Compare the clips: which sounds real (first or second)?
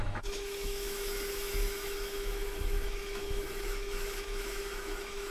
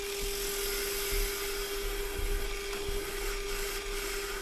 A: second